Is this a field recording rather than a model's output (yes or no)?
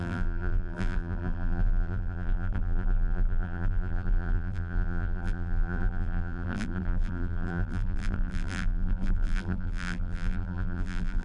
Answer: no